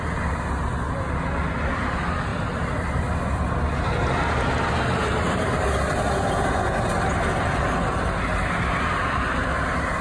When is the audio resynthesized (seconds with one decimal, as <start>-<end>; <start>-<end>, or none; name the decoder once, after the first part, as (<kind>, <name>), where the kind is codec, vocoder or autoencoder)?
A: none